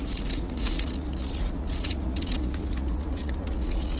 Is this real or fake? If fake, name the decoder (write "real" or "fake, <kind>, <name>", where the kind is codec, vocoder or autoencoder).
fake, vocoder, Vocos